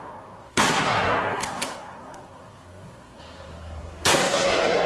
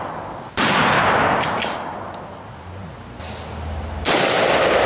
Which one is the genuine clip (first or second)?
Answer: second